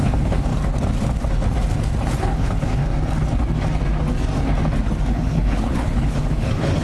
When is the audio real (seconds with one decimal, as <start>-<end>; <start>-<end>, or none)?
0.5-2.2; 2.8-5.1